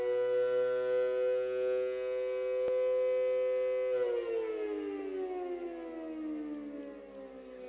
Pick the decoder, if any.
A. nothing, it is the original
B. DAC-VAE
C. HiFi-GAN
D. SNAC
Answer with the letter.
A